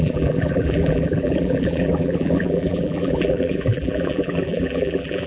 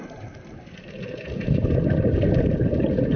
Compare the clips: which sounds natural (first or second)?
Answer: second